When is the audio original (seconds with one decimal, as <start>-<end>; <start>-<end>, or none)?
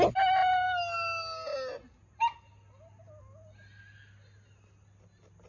0.0-5.5